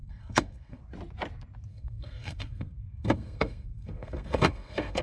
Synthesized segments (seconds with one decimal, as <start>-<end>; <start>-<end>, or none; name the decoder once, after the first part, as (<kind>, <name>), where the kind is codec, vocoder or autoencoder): 0.0-0.8 (codec, SNAC); 1.7-5.0

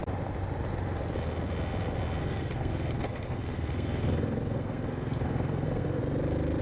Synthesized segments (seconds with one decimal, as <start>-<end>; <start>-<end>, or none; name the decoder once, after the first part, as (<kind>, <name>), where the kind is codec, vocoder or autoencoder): 2.2-6.0 (codec, SNAC)

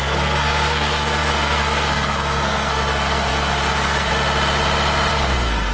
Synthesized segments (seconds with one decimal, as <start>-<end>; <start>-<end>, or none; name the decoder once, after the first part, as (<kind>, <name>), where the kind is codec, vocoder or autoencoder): 0.0-4.1 (codec, SNAC); 5.1-5.7

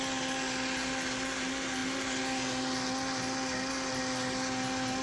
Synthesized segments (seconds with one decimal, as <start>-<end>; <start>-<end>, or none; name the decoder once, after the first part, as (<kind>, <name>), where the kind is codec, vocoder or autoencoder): none

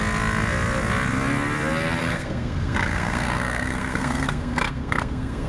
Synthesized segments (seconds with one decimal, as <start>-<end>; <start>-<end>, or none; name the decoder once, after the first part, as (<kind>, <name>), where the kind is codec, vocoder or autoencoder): 2.0-5.5 (codec, SNAC)

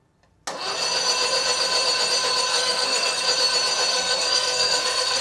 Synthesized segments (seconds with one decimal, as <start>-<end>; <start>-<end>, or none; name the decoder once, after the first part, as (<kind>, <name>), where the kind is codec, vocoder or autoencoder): 2.5-3.2 (codec, SNAC); 3.9-5.2

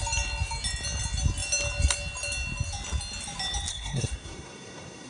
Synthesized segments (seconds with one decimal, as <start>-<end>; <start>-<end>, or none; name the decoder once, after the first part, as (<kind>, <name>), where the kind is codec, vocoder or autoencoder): 3.7-5.1 (codec, SNAC)

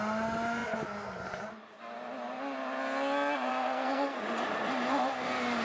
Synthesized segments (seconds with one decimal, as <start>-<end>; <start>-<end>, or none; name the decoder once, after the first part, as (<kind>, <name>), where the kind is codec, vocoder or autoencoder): 3.5-4.2 (codec, SNAC)